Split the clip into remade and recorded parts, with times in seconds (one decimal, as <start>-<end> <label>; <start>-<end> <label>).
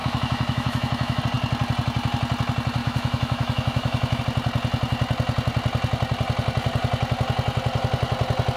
0.0-1.2 remade; 1.2-2.8 recorded; 2.8-4.2 remade; 4.2-8.6 recorded